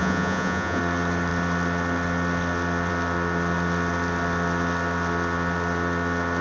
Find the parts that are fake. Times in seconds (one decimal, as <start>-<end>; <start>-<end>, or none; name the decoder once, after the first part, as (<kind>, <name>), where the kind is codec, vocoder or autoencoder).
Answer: 0.0-0.8 (vocoder, Vocos)